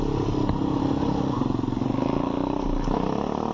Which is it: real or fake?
real